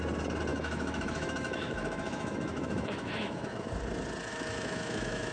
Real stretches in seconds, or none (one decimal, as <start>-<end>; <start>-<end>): 0.0-0.5; 3.7-4.3